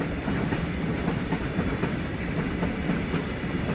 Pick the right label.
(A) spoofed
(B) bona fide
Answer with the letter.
A